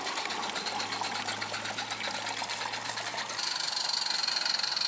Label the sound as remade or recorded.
recorded